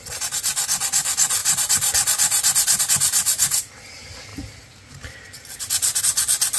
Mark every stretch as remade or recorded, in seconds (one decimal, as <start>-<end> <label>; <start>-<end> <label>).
0.0-1.4 recorded; 1.4-2.8 remade; 2.8-6.6 recorded